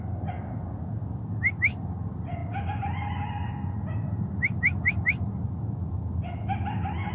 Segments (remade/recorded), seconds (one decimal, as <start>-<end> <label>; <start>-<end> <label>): 0.0-7.1 recorded